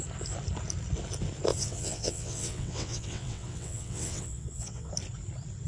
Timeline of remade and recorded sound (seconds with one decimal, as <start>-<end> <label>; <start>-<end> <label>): 0.0-1.5 recorded; 1.5-4.9 remade; 4.9-5.7 recorded